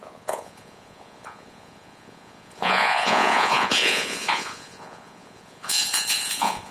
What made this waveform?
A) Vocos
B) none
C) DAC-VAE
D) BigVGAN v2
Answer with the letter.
A